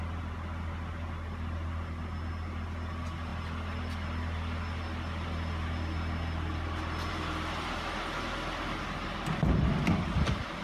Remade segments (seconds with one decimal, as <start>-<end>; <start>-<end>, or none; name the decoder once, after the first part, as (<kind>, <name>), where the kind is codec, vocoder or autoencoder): none

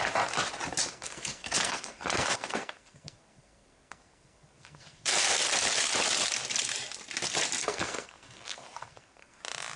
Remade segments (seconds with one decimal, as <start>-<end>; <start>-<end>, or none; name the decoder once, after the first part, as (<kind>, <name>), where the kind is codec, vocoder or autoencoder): 0.9-5.4 (codec, SNAC); 7.6-9.4

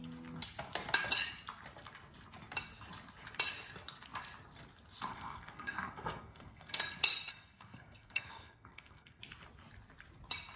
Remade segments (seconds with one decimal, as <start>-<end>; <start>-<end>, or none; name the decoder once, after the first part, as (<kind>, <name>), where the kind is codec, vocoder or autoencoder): 5.1-6.8 (codec, SNAC); 7.3-9.2

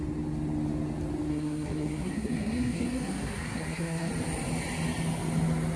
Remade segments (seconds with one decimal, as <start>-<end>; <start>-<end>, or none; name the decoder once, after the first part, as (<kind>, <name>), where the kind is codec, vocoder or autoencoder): 1.3-4.1 (codec, SNAC)

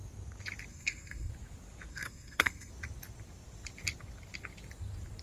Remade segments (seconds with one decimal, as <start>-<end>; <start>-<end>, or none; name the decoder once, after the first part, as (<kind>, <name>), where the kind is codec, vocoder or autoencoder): 0.7-1.3 (codec, SNAC); 1.9-2.7

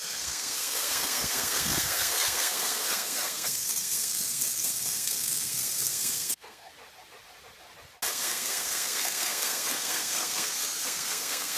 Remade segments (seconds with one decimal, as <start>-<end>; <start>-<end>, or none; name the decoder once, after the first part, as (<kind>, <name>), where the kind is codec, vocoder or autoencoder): 0.0-6.7 (codec, SNAC); 8.1-11.6